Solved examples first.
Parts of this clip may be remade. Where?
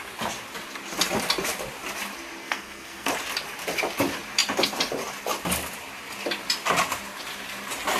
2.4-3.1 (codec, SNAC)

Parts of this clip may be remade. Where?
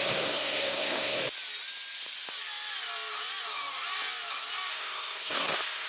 0.0-1.2 (codec, SNAC); 4.7-5.9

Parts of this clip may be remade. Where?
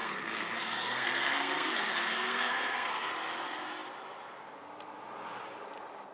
0.0-3.1 (codec, SNAC)